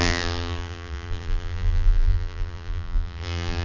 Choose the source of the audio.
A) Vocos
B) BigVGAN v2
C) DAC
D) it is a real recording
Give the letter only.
B